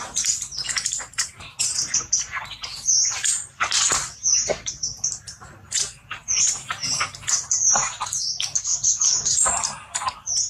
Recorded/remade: recorded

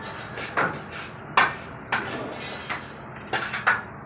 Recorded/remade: recorded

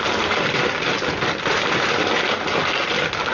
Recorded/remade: recorded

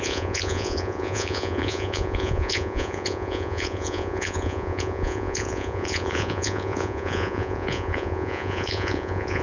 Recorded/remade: remade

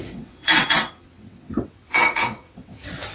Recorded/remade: remade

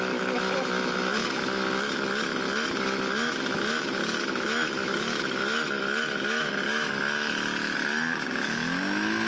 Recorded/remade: remade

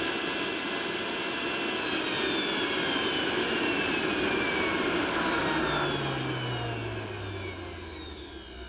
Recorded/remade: recorded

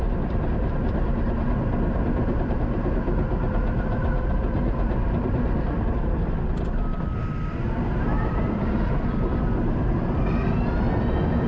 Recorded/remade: remade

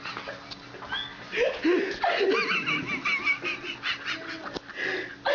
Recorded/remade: recorded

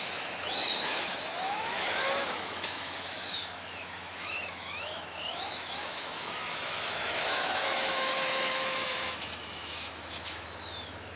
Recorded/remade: remade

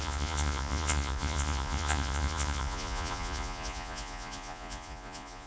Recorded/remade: remade